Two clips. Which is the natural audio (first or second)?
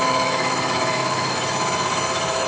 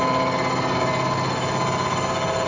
second